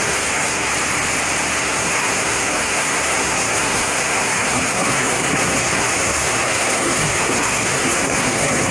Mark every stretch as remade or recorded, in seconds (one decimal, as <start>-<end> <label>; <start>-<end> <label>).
0.0-0.7 remade; 0.7-1.6 recorded; 1.6-8.7 remade